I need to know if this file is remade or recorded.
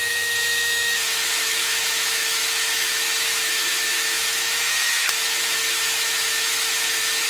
remade